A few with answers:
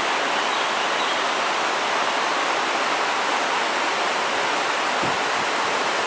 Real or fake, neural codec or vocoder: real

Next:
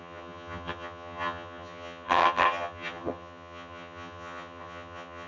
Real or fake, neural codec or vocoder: fake, vocoder, HiFi-GAN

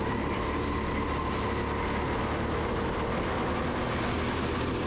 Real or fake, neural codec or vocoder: real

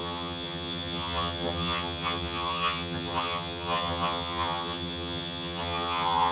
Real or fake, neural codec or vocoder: fake, vocoder, HiFi-GAN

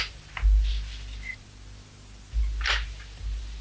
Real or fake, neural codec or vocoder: real